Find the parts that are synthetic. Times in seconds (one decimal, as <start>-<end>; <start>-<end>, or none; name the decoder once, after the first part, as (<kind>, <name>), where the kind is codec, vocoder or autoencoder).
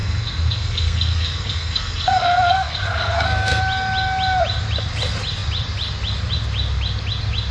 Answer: 0.0-3.6 (codec, SNAC)